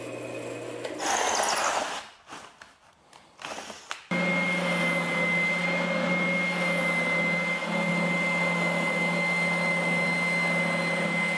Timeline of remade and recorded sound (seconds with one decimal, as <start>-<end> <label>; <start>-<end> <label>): 0.0-11.4 recorded